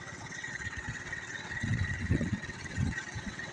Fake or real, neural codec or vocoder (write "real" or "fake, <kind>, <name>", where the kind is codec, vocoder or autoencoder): fake, vocoder, WaveNeXt